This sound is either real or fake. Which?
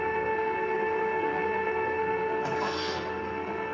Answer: fake